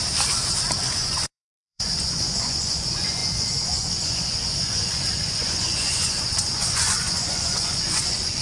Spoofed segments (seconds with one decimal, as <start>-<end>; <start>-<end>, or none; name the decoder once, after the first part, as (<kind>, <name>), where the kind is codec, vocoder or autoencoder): 0.8-8.4 (vocoder, Vocos)